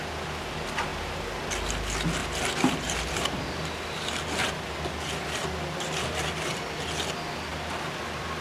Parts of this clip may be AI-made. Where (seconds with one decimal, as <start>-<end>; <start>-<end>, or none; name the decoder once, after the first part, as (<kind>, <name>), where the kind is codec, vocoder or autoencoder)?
2.2-6.8 (vocoder, BigVGAN v2); 7.5-8.4